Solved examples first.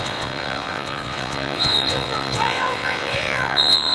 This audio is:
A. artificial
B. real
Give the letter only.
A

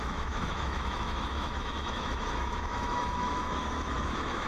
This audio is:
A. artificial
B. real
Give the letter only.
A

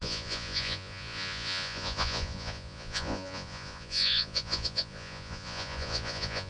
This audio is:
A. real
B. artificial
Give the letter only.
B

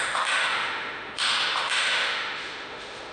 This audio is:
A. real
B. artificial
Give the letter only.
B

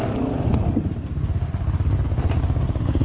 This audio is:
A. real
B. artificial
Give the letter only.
A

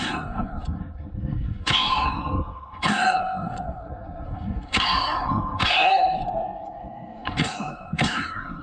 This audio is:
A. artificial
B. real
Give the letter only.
A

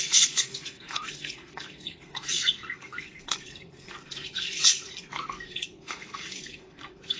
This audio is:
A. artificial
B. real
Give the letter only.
A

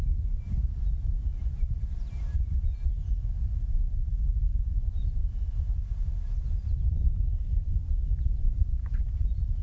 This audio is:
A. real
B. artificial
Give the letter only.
A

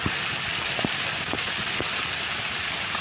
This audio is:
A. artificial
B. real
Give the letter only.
B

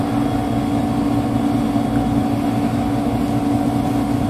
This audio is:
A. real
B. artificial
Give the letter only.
A